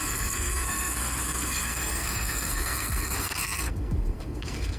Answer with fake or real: fake